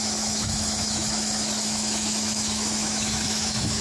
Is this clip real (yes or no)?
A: no